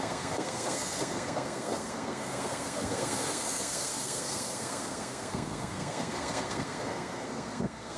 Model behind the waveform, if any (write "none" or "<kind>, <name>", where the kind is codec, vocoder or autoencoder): codec, SNAC